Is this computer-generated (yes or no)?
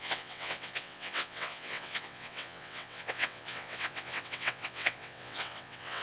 yes